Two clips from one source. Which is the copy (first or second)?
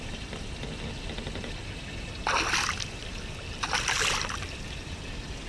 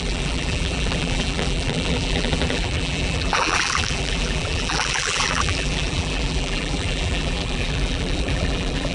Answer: second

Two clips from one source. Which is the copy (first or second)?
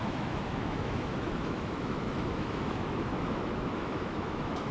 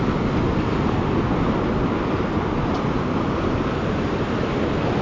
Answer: first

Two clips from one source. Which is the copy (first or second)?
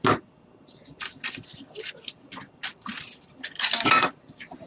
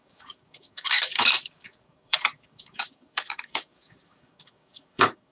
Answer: second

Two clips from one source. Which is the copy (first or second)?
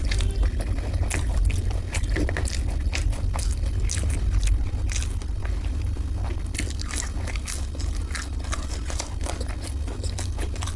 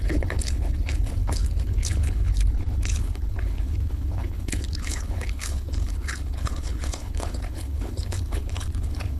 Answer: second